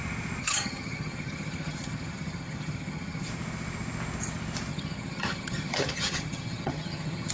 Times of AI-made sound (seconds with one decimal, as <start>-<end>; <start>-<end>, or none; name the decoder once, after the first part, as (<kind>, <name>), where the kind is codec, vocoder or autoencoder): 0.4-3.3 (vocoder, HiFi-GAN); 4.7-7.3